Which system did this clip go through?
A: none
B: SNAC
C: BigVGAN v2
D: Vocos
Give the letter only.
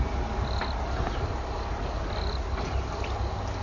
A